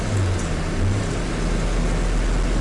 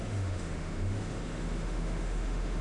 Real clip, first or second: first